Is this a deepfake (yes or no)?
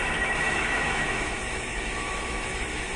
yes